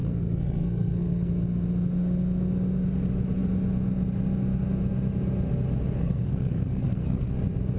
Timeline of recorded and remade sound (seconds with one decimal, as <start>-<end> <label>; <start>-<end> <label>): 0.0-1.3 remade; 1.3-6.0 recorded; 6.0-7.3 remade; 7.3-7.8 recorded